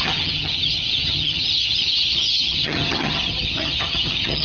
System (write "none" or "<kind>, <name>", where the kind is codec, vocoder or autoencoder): vocoder, HiFi-GAN